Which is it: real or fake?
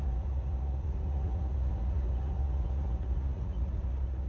fake